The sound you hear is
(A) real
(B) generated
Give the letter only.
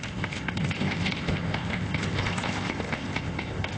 B